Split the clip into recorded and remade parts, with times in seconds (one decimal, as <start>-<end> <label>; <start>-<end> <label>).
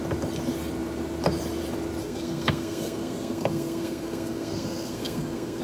0.0-2.0 recorded; 2.0-5.6 remade